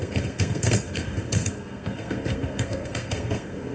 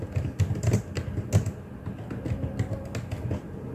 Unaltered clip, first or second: second